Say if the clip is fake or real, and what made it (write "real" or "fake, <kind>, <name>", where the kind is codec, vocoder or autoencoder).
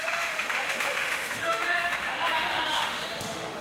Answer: fake, autoencoder, DAC-VAE